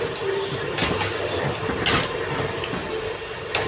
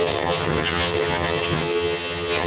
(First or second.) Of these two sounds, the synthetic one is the second